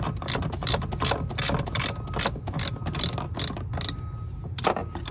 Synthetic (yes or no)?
no